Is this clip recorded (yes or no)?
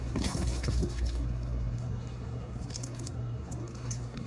no